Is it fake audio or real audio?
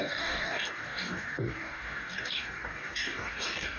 fake